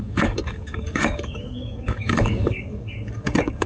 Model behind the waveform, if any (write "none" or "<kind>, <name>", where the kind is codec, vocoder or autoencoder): codec, DAC